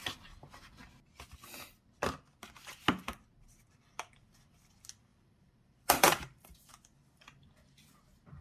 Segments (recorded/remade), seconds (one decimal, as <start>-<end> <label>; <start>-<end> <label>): 0.0-0.7 remade; 0.7-5.1 recorded; 5.1-6.7 remade; 6.7-8.4 recorded